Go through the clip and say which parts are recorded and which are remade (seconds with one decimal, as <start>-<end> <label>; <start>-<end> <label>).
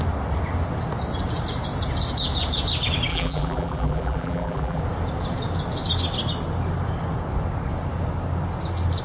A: 0.0-3.1 recorded; 3.1-4.8 remade; 4.8-9.0 recorded